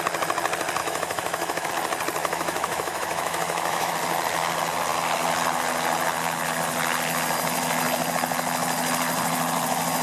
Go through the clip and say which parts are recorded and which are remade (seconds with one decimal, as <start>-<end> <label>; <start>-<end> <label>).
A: 0.0-0.8 recorded; 0.8-1.7 remade; 1.7-2.2 recorded; 2.2-3.9 remade; 3.9-10.0 recorded